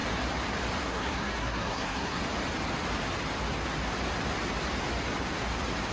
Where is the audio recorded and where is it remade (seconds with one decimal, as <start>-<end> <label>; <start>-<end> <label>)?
0.0-0.8 recorded; 0.8-2.2 remade; 2.2-5.9 recorded